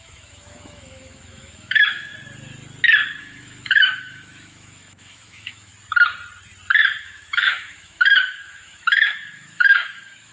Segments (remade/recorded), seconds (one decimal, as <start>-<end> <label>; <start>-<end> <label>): 0.0-2.1 remade; 2.1-3.2 recorded; 3.2-5.7 remade; 5.7-7.0 recorded; 7.0-10.3 remade